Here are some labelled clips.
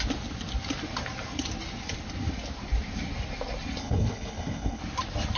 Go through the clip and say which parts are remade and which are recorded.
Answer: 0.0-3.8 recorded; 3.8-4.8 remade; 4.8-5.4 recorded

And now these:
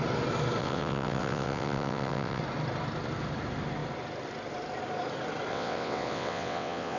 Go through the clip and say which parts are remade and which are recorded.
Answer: 0.0-0.6 recorded; 0.6-2.4 remade; 2.4-5.5 recorded; 5.5-7.0 remade

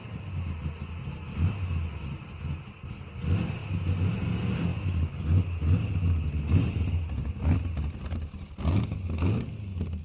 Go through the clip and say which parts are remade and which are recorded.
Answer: 0.0-10.0 recorded

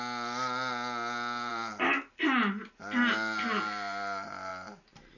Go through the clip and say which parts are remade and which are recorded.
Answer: 0.0-5.2 recorded